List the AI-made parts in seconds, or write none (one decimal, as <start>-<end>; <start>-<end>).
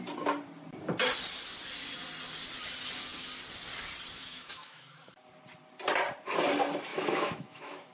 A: 4.2-5.1; 6.9-7.9